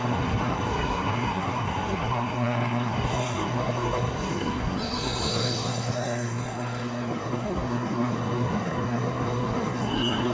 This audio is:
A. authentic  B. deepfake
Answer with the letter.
B